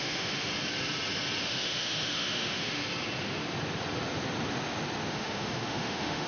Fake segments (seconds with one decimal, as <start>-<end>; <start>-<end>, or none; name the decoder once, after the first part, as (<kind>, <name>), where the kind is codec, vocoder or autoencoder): 0.0-0.5 (autoencoder, DAC-VAE); 1.4-2.8; 5.1-6.3